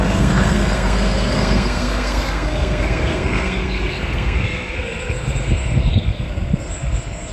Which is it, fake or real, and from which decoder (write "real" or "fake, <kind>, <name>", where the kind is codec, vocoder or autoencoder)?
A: fake, codec, SNAC